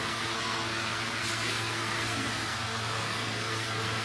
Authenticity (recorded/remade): remade